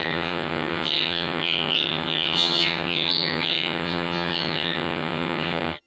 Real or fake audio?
fake